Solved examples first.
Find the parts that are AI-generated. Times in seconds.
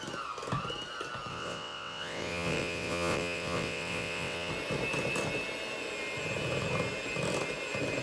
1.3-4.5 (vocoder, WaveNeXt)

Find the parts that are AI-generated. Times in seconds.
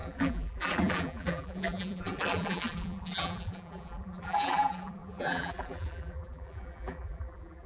0.0-7.7 (vocoder, BigVGAN v2)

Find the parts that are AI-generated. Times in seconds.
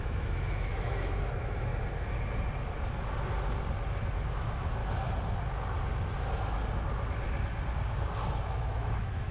0.0-1.7 (autoencoder, DAC-VAE); 4.3-4.8; 8.5-9.3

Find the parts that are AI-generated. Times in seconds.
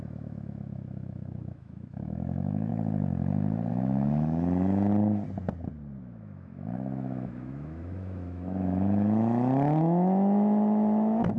0.0-2.7 (autoencoder, DAC-VAE); 3.7-4.9; 6.0-11.4